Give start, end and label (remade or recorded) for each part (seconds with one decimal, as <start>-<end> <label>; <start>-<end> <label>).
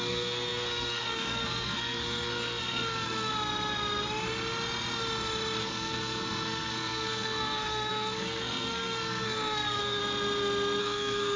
0.0-3.3 remade; 3.3-5.6 recorded; 5.6-10.0 remade; 10.0-10.8 recorded; 10.8-11.4 remade